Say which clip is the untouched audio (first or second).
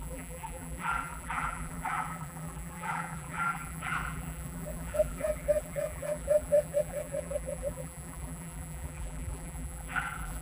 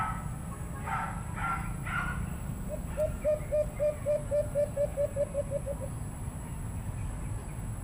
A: second